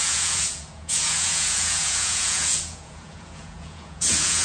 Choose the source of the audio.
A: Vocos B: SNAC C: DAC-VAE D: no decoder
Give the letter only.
A